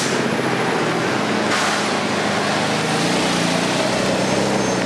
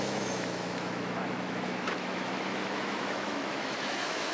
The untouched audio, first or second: first